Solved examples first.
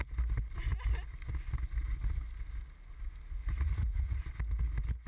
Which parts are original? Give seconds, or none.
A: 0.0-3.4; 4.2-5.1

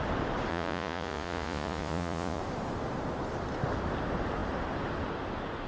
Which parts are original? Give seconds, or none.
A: 0.0-0.5; 2.4-5.7

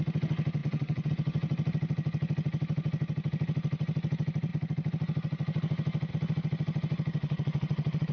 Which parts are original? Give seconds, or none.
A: 0.0-0.6; 1.1-7.2

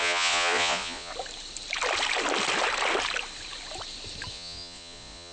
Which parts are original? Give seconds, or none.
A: 1.1-4.3

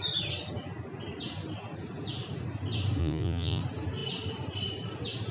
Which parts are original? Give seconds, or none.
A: 0.0-3.0; 3.6-5.3